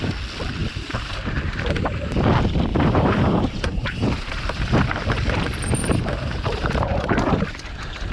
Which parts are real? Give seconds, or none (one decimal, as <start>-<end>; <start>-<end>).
0.0-0.6; 2.1-2.7; 4.9-5.9; 7.2-8.1